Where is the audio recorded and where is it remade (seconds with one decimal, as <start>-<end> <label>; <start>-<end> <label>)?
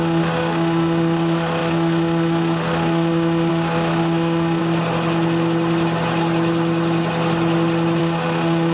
0.0-4.6 remade; 4.6-8.0 recorded; 8.0-8.7 remade